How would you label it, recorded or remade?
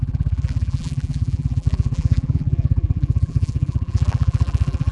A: remade